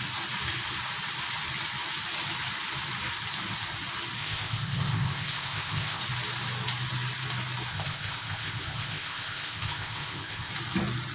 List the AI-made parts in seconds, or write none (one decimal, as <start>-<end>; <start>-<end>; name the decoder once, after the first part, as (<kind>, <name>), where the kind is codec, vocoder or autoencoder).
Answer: 4.2-6.0 (codec, ZipCodec); 7.7-10.5